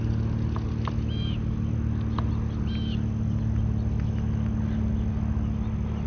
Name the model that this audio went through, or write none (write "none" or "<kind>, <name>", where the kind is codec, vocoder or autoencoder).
none